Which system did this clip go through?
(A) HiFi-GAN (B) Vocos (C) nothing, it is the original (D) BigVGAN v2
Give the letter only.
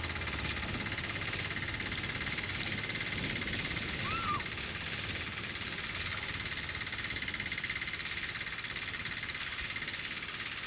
C